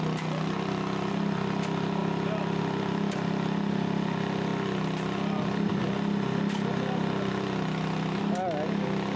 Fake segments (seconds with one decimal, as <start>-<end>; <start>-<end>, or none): none

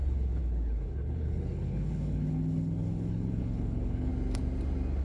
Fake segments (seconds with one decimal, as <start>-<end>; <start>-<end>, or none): 0.0-4.1

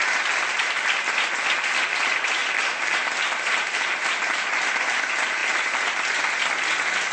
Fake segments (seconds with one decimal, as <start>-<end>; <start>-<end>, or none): none

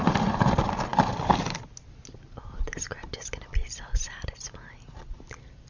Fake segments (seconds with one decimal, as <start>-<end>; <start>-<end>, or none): none

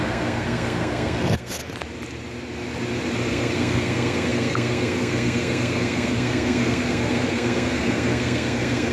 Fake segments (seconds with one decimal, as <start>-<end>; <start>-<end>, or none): 0.0-1.6; 3.3-8.9

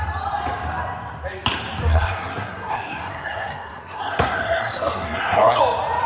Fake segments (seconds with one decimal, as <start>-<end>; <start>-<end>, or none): 1.9-5.6

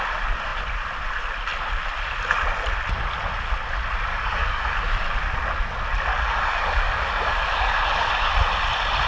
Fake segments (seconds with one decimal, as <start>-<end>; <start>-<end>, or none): 4.1-4.8; 6.1-8.3